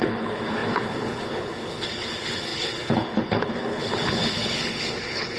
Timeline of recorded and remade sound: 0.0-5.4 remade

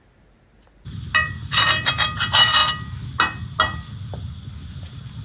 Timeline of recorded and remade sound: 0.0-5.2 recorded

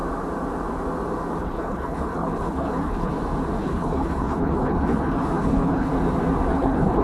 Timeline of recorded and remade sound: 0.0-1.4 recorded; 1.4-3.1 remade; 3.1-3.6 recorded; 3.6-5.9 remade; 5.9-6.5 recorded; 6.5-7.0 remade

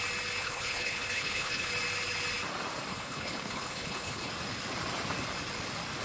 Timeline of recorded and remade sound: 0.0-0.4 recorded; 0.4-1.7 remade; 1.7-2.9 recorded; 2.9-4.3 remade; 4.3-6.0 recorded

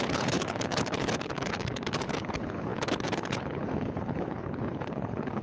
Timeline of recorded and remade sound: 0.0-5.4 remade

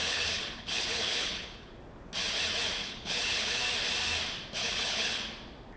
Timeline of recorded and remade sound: 0.0-1.7 remade; 1.7-2.8 recorded; 2.8-3.6 remade; 3.6-4.6 recorded; 4.6-5.2 remade; 5.2-5.8 recorded

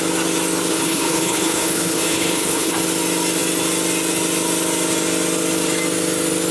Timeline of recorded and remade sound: 0.0-0.7 recorded; 0.7-2.7 remade; 2.7-6.5 recorded